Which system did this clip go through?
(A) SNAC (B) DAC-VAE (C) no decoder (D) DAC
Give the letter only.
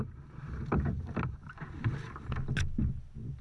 C